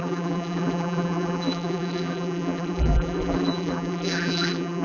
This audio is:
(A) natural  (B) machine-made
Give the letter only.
B